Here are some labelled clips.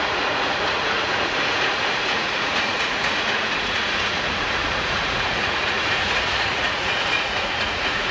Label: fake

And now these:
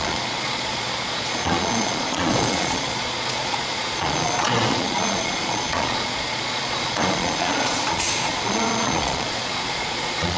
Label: fake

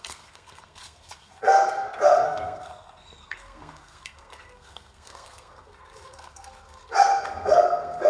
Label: fake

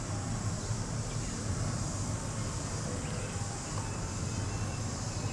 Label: real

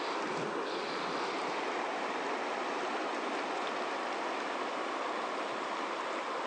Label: real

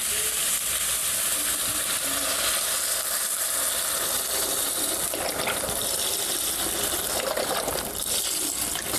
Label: real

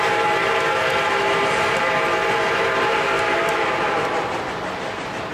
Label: real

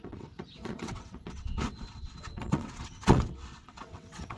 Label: fake